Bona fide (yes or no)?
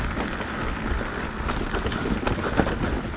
yes